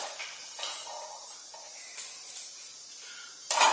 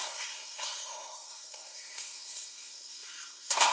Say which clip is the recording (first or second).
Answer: first